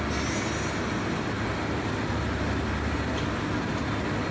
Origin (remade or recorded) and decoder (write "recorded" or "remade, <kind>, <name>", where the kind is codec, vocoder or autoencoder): recorded